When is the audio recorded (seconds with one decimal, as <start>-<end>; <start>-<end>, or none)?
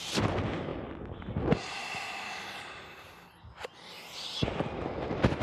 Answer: 0.0-5.4